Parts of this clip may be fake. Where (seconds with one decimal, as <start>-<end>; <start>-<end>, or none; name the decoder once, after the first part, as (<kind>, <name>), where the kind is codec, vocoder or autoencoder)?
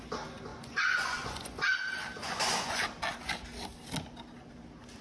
0.5-1.6 (vocoder, Vocos); 2.2-2.8